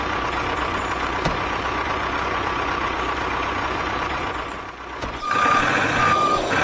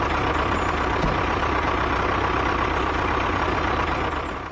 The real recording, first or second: second